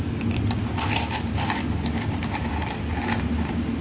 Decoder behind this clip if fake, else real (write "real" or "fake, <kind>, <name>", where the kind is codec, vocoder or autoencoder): fake, vocoder, BigVGAN v2